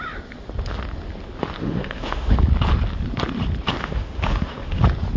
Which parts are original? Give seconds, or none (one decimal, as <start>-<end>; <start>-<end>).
0.0-1.6; 2.4-3.8; 4.8-5.2